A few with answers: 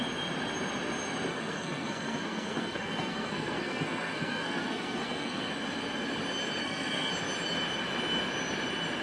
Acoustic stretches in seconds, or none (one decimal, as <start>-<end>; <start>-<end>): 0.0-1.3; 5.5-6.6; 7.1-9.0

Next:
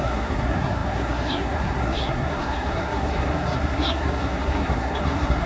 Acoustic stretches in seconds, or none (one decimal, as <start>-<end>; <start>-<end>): none

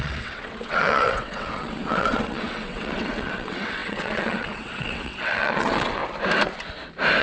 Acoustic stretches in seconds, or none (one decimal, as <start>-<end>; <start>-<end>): 6.0-7.2